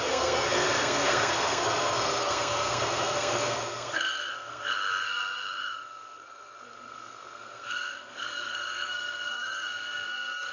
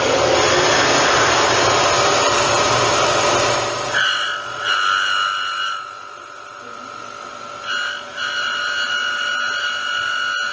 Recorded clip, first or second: second